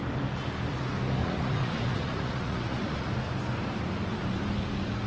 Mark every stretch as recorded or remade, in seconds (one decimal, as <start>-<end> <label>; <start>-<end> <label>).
0.0-1.2 recorded; 1.2-3.1 remade; 3.1-5.1 recorded